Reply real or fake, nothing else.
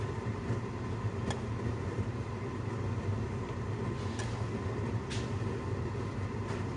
real